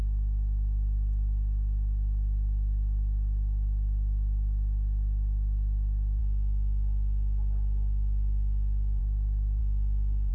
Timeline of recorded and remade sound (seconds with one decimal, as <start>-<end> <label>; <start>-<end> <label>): 0.0-10.3 recorded